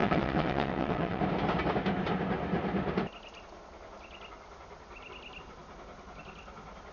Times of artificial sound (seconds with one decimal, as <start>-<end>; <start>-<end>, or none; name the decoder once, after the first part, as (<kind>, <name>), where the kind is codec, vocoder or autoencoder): 0.0-1.2 (vocoder, WaveNeXt)